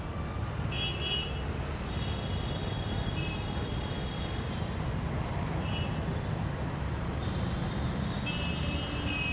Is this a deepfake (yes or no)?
no